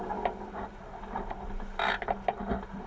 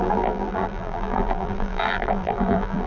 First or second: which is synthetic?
second